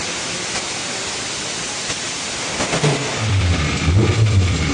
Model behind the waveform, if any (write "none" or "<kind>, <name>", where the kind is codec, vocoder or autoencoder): vocoder, BigVGAN v2